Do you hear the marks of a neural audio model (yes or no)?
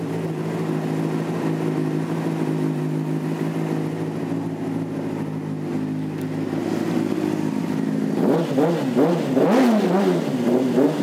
no